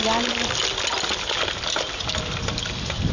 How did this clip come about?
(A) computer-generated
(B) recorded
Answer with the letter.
B